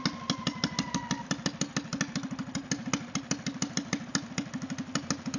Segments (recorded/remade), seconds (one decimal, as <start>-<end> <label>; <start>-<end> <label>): 0.0-5.4 recorded